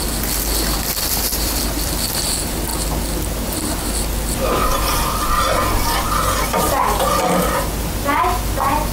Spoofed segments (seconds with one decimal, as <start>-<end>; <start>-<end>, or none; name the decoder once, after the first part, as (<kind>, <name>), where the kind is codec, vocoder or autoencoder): 1.3-2.2 (vocoder, BigVGAN v2)